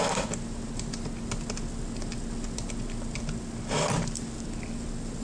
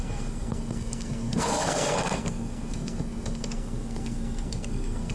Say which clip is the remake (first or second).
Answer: second